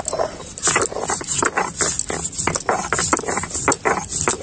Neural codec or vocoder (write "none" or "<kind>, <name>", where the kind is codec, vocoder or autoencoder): none